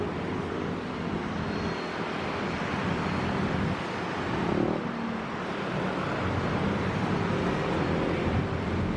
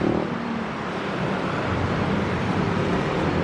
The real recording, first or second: first